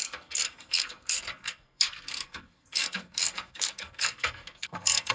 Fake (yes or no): yes